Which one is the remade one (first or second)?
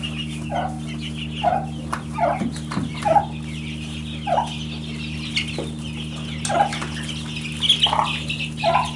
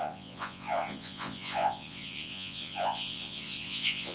second